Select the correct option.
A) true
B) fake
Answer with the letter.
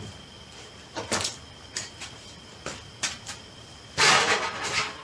B